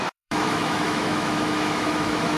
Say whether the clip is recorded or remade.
remade